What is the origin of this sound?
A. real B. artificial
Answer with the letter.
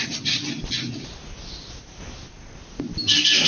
A